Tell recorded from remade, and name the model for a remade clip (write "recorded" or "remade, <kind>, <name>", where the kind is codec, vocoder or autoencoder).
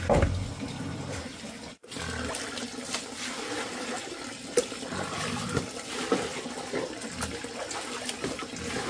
recorded